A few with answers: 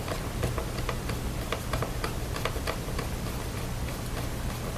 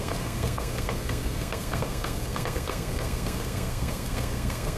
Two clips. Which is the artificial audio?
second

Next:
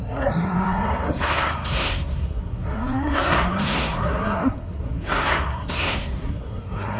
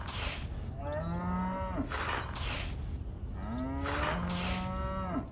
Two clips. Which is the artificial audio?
first